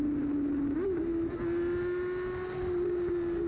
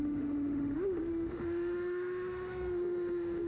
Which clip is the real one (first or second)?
first